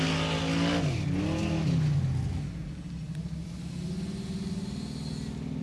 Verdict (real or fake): real